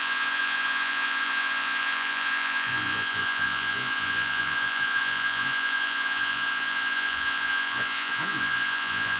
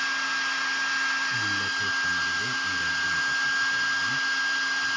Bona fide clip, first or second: second